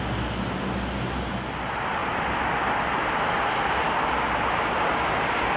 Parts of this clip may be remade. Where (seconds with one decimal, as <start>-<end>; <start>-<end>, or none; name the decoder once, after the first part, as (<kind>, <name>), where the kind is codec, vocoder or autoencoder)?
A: none